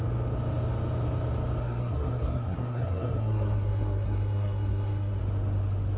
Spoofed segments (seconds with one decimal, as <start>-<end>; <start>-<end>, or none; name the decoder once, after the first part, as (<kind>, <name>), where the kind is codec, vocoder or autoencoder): 1.6-5.2 (codec, SNAC)